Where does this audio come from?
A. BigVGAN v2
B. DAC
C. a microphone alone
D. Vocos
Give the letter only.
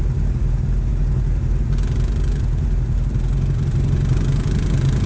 C